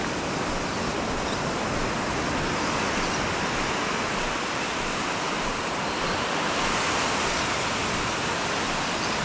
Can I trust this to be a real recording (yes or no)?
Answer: yes